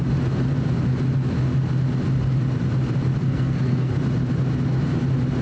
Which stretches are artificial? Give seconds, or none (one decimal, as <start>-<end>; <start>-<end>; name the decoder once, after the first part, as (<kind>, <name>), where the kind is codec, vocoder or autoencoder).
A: 3.2-3.9 (codec, SNAC)